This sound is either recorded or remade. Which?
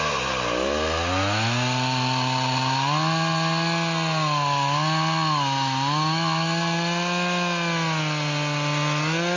recorded